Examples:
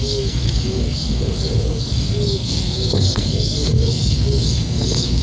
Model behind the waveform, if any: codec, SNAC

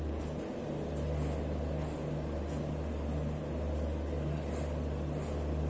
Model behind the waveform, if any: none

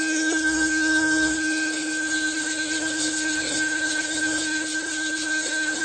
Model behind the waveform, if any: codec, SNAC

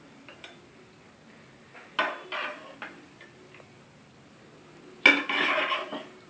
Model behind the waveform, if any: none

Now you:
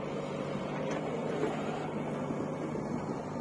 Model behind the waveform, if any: none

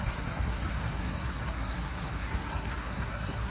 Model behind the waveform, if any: codec, SNAC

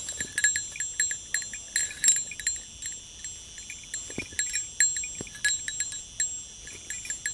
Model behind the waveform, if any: none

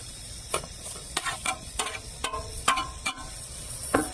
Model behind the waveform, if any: vocoder, Vocos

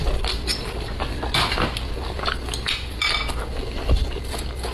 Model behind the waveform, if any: none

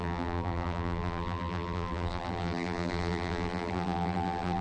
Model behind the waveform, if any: vocoder, BigVGAN v2